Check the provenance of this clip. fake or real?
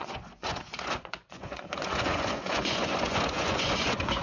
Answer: fake